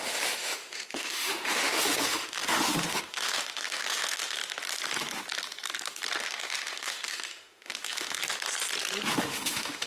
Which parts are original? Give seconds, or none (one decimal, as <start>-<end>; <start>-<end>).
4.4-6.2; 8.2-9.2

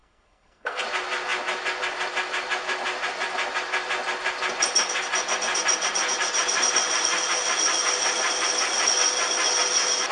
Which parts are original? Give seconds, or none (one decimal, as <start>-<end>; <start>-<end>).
0.8-10.1

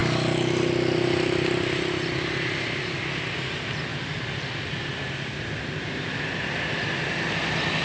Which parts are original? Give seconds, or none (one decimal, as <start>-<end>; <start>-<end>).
0.0-3.9; 6.9-7.8

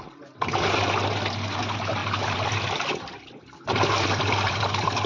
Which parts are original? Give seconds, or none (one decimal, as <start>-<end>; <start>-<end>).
0.0-2.0